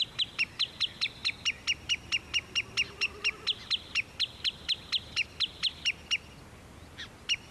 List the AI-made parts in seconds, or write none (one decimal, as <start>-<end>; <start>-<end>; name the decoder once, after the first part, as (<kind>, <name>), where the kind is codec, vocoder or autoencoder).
none